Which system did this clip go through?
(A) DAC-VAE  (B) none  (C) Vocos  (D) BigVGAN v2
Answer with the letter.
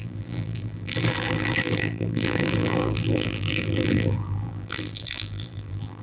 D